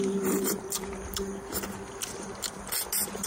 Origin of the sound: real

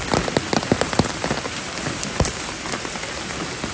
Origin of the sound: real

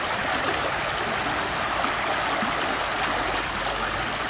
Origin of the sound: real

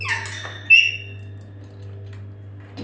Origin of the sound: real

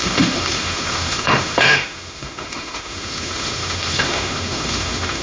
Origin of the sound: fake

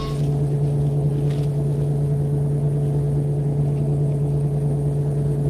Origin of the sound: real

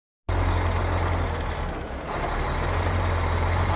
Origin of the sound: real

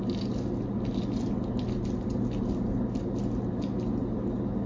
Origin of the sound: real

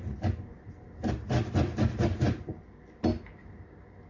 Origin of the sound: real